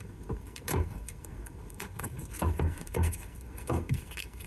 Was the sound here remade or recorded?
remade